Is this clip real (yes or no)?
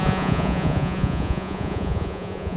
no